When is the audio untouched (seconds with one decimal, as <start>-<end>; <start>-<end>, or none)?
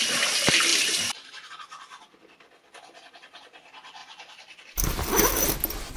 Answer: 0.0-0.7; 1.5-4.0; 5.2-6.0